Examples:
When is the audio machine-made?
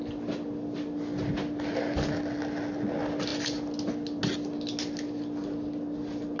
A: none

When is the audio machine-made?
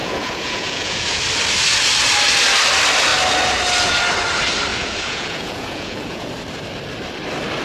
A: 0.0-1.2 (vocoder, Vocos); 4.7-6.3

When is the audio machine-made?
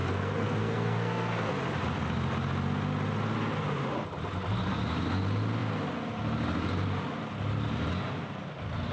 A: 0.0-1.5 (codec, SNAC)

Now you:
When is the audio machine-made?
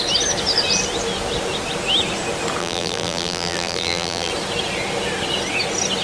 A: 2.6-4.3 (vocoder, BigVGAN v2)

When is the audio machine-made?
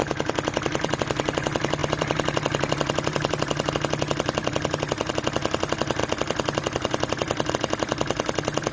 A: 0.0-1.0 (vocoder, BigVGAN v2); 1.8-3.7; 4.4-5.1; 6.0-7.5